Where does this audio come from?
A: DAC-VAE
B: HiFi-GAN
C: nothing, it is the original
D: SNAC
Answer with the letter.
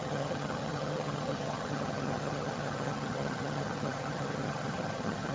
B